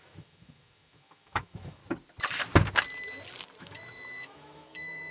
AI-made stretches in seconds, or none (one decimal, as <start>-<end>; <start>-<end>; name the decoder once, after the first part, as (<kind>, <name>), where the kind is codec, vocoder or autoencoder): 0.0-1.8 (autoencoder, DAC-VAE); 3.6-5.1